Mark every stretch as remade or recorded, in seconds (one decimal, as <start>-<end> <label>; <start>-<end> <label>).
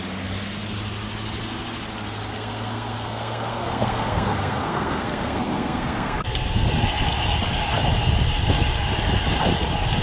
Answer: 0.0-2.3 recorded; 2.3-6.7 remade; 6.7-10.0 recorded